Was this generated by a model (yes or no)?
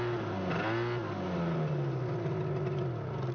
no